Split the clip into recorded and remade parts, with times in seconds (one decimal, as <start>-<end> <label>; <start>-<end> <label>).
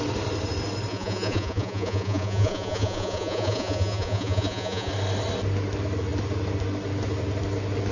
0.0-0.9 recorded; 0.9-4.9 remade; 4.9-7.9 recorded